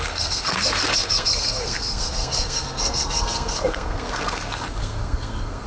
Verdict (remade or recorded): remade